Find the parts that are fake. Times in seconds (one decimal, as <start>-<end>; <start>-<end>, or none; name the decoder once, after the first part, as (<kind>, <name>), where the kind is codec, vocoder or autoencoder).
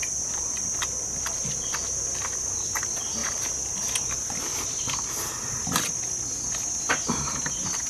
none